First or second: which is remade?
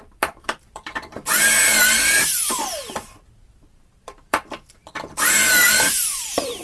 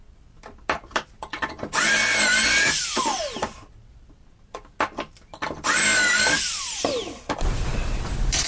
first